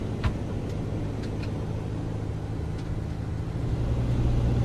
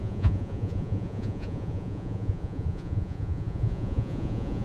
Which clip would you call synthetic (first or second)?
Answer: second